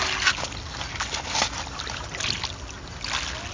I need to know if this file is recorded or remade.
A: recorded